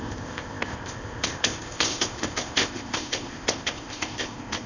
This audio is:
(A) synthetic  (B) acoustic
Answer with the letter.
A